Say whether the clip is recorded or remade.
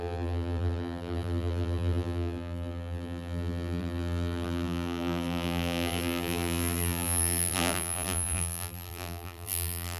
remade